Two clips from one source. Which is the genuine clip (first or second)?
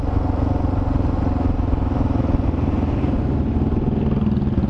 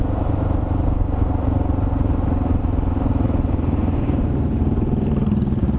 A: first